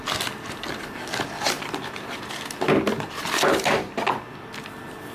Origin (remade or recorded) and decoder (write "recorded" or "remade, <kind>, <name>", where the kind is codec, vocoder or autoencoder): recorded